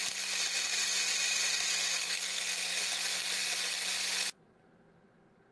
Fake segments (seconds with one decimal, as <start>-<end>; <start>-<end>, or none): 2.0-2.8